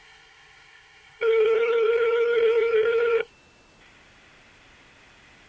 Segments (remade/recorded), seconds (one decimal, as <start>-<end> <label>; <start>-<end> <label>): 0.0-3.3 remade; 3.3-5.5 recorded